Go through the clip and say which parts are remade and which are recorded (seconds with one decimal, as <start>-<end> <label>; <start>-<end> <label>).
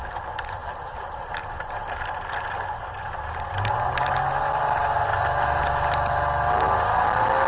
0.0-7.5 recorded